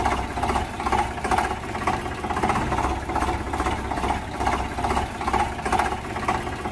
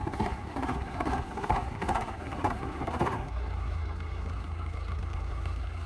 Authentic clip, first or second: first